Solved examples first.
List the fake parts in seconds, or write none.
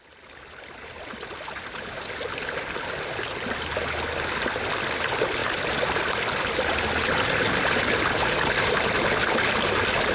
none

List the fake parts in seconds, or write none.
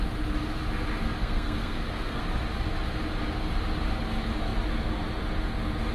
1.2-2.2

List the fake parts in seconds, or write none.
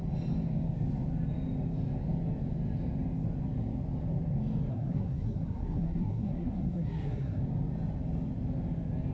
4.7-7.4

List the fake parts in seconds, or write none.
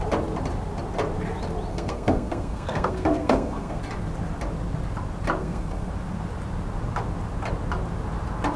1.7-3.8; 5.4-5.9